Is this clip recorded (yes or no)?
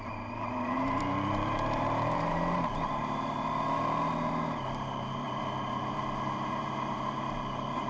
no